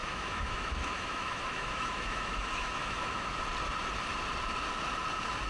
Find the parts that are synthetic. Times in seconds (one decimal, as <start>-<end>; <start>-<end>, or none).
0.0-3.3